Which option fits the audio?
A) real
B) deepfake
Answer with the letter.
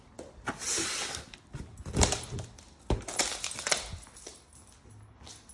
A